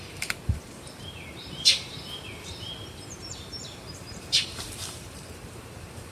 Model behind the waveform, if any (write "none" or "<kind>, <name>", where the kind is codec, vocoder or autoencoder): vocoder, BigVGAN v2